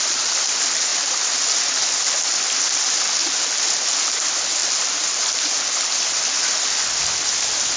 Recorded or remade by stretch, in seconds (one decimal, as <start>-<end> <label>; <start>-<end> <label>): 0.0-7.8 recorded